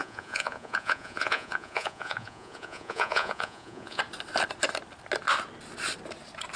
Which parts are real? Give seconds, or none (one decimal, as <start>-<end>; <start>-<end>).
4.0-6.6